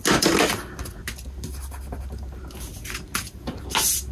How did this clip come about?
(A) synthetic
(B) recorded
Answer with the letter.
B